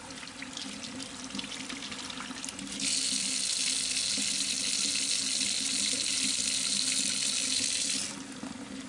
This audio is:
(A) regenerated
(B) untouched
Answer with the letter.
B